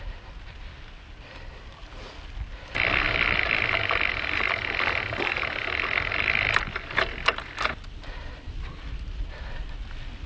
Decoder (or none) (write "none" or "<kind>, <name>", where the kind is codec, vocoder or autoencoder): none